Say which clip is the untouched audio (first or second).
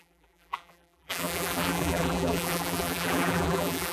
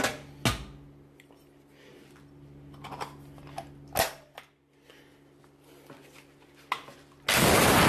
second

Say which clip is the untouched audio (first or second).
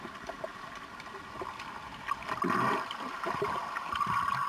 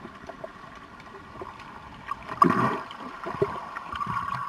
first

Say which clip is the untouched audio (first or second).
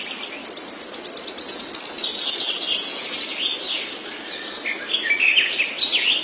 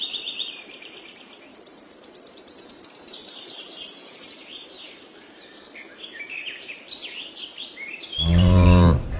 first